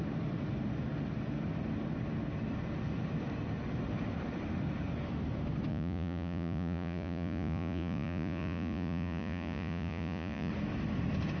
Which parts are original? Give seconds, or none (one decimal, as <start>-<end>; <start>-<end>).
0.0-5.7; 10.5-11.4